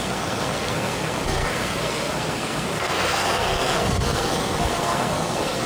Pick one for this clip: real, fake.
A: fake